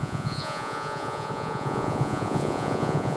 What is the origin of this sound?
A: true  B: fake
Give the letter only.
B